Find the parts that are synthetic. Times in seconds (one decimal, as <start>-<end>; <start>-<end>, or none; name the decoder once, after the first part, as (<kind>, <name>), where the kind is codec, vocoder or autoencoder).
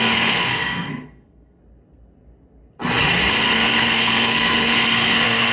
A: 0.0-1.6 (codec, SNAC); 3.3-5.5